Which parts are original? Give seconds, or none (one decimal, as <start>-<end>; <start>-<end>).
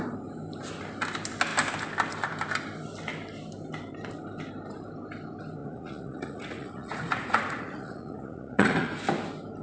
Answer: 0.0-5.6; 9.0-9.6